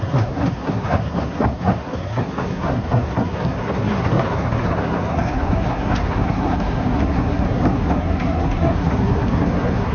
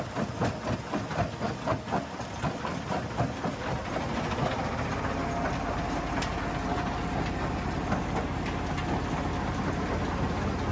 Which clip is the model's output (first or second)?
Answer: first